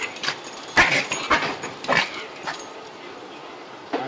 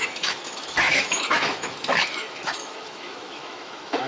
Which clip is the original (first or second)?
first